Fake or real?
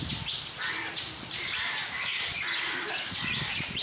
fake